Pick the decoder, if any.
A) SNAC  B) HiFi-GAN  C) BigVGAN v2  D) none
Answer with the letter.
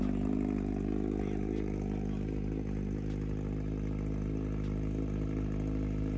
D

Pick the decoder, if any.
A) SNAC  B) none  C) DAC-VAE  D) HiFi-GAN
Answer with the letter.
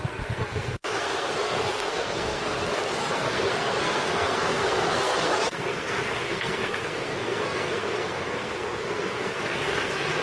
A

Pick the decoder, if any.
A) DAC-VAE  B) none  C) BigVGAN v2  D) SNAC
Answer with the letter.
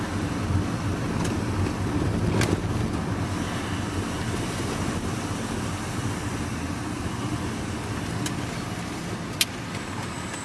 B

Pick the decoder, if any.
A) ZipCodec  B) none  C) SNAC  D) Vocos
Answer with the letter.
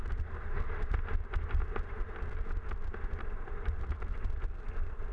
B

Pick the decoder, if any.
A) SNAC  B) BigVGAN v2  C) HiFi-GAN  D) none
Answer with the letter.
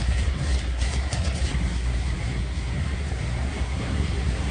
A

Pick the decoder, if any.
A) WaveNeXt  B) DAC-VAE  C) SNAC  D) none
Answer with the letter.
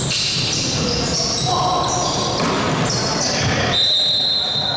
D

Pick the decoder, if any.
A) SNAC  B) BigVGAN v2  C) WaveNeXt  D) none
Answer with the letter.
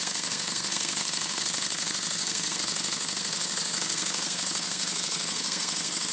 A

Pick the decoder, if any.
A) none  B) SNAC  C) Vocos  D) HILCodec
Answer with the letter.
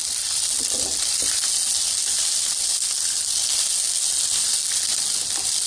A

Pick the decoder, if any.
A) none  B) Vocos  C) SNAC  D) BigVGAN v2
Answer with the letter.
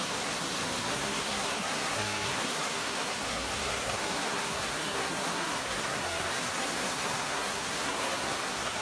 C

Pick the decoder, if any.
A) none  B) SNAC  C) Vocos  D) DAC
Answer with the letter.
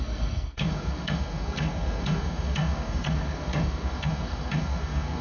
B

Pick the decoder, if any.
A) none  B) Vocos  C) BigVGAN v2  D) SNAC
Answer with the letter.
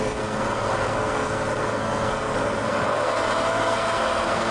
D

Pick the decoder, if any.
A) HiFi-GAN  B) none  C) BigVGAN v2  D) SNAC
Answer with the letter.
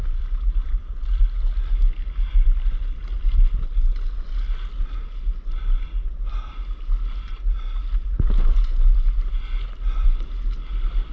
B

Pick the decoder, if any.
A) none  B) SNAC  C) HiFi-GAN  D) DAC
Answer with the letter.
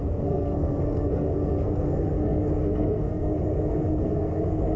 B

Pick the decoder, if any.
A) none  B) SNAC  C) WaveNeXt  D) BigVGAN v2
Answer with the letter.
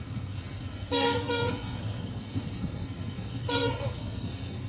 B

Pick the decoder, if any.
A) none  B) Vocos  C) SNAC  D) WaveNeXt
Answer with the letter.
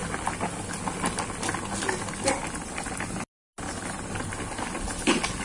A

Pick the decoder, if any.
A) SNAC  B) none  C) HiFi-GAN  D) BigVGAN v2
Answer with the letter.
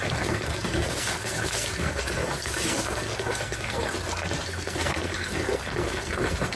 A